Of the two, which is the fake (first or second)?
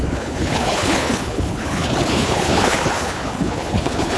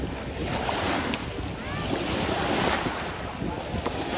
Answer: first